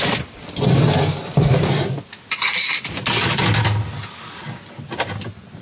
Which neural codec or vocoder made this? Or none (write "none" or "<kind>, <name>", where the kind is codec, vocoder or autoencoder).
none